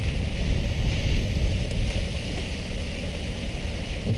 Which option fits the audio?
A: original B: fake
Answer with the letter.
A